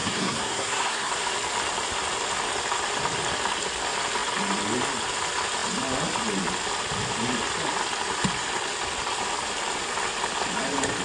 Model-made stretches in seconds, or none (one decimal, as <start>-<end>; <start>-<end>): 0.0-1.1